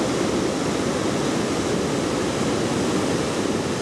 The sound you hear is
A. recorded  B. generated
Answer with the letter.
A